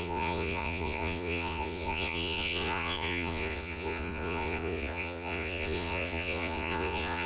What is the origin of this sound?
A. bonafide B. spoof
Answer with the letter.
B